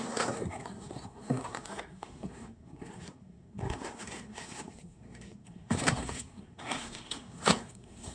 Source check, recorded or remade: remade